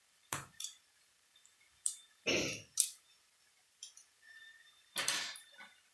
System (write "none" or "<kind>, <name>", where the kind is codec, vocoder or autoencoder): vocoder, BigVGAN v2